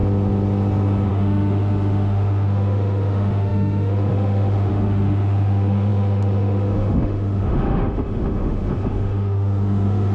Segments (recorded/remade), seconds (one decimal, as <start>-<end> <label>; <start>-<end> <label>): 0.0-1.1 recorded; 1.1-10.1 remade